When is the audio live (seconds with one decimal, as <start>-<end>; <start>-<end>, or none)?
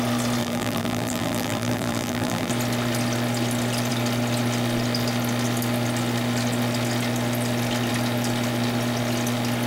0.0-0.4; 2.5-9.7